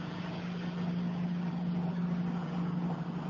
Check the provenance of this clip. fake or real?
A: real